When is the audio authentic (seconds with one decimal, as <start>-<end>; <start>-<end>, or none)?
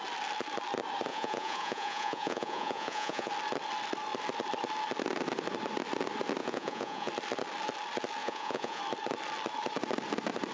0.0-1.1; 3.3-6.4; 7.1-8.2; 8.8-10.5